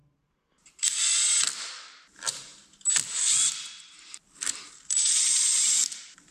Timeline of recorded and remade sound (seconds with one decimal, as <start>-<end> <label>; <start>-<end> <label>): 0.0-1.6 recorded; 1.6-2.5 remade; 2.5-4.0 recorded; 4.0-6.3 remade